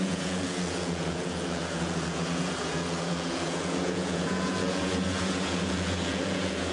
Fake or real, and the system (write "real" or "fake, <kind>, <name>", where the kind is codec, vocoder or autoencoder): fake, vocoder, Vocos